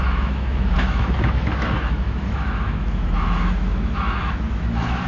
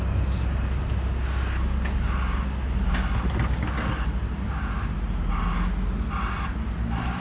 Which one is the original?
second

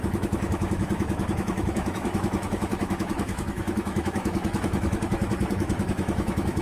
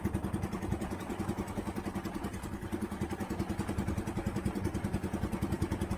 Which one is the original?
second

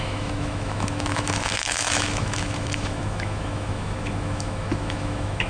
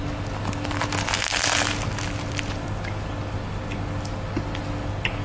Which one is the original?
second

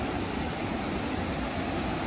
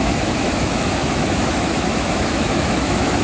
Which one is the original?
first